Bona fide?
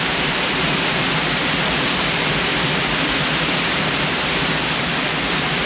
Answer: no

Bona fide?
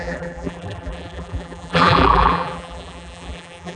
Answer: no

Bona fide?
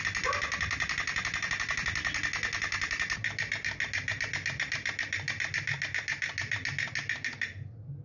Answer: yes